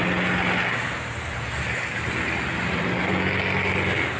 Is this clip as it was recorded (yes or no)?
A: yes